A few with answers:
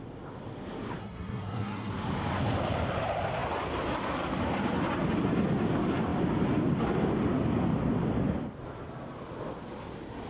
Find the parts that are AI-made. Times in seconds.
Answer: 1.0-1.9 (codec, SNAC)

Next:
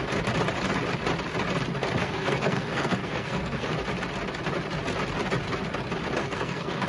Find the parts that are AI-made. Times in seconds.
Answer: 2.0-3.7 (codec, SNAC); 6.2-6.9

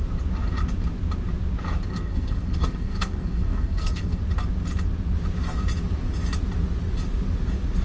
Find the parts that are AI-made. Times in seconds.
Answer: 1.9-4.2 (codec, SNAC)

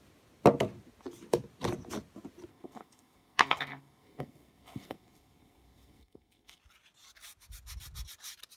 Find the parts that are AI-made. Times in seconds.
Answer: 2.5-6.6 (codec, SNAC)

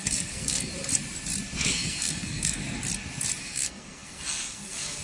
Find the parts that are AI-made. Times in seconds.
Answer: 0.0-0.7 (codec, SNAC); 1.6-2.6; 3.4-5.0

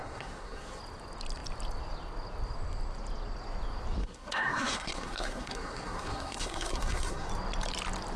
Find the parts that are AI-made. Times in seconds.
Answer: 0.0-0.8 (codec, SNAC); 4.0-7.3

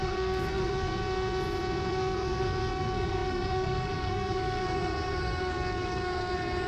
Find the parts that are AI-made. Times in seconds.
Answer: 0.0-1.0 (codec, SNAC); 1.9-6.7